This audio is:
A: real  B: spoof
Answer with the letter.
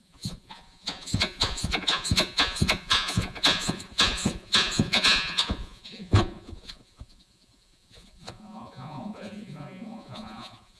B